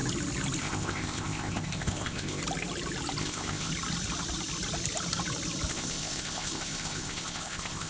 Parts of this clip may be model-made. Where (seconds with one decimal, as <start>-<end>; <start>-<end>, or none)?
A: 0.6-2.4; 3.2-3.7; 5.7-7.9